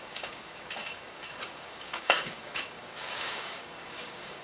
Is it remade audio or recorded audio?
remade